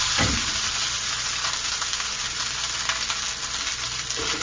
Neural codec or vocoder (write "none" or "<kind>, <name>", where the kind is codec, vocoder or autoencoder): none